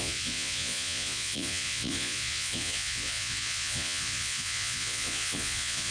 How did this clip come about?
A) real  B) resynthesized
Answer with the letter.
B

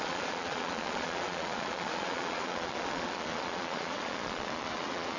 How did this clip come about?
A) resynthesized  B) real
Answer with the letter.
A